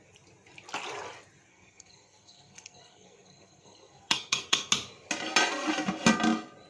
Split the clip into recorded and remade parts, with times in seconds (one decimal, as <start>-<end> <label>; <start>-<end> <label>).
0.0-1.5 recorded; 1.5-4.7 remade; 4.7-6.7 recorded

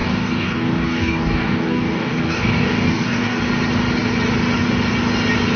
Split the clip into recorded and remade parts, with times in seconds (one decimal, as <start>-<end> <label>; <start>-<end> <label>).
0.0-3.4 remade; 3.4-5.6 recorded

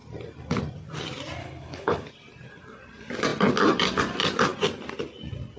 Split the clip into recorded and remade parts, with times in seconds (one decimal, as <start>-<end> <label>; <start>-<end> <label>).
0.0-1.4 recorded; 1.4-2.1 remade; 2.1-5.6 recorded

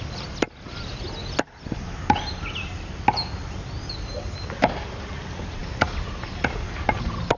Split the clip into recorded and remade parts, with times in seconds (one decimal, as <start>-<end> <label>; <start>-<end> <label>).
0.0-7.4 recorded

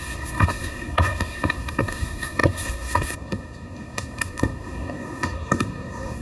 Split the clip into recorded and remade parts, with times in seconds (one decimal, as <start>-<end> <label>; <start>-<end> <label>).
0.0-6.2 remade

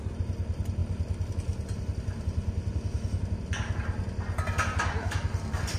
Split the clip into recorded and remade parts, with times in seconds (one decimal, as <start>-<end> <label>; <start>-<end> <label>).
0.0-5.8 recorded